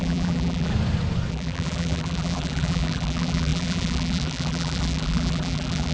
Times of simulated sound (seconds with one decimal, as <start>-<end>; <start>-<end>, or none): 0.0-0.7; 1.3-5.9